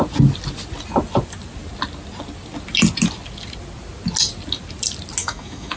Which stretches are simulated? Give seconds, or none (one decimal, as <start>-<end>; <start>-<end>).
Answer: 5.2-5.8